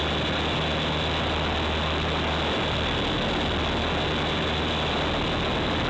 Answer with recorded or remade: recorded